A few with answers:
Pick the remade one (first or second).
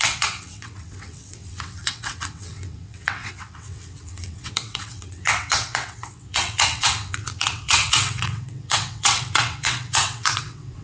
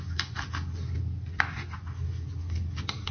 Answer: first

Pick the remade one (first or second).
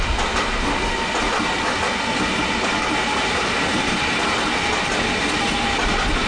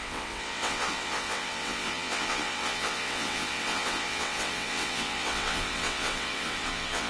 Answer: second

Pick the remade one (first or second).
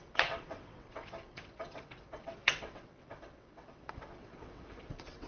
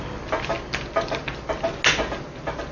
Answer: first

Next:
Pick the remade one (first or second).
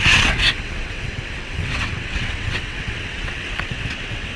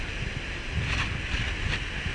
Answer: first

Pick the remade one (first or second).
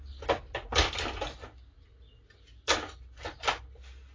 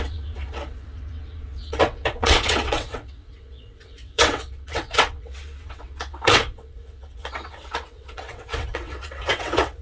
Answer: second